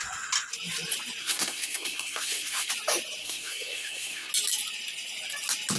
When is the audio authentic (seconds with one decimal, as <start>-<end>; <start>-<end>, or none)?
0.0-1.2; 2.7-3.2; 4.3-5.8